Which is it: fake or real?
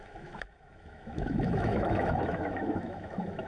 fake